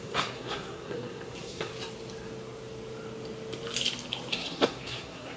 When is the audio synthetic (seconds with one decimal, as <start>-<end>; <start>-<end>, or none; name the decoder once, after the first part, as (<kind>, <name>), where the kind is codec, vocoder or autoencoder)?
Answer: 0.0-1.7 (codec, SNAC); 4.3-5.4